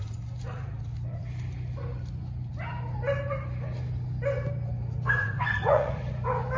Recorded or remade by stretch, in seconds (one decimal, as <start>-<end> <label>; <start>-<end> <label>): 0.0-5.2 recorded; 5.2-6.0 remade; 6.0-6.6 recorded